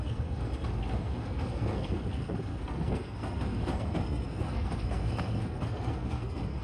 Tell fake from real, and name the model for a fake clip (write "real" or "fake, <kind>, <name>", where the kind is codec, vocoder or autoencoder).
fake, codec, SNAC